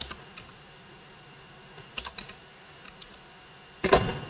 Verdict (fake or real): real